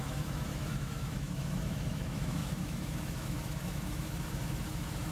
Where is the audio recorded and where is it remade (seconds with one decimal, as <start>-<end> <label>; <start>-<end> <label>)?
0.0-5.1 remade